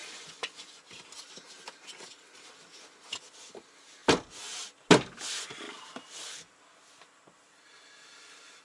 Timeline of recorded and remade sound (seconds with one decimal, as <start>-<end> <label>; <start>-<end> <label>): 0.0-0.8 remade; 0.8-8.6 recorded